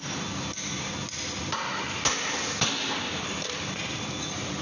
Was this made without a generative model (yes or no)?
yes